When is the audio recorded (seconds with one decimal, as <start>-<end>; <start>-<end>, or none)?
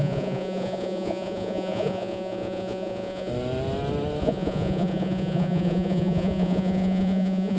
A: 3.3-4.2